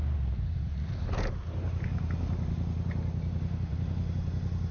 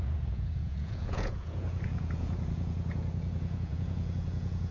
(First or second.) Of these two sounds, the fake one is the second